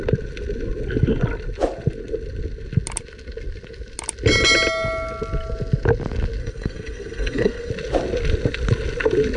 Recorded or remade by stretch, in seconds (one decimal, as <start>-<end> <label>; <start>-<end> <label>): 0.0-6.4 recorded; 6.4-7.7 remade; 7.7-9.4 recorded